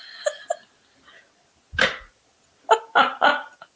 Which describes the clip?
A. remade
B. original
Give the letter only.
B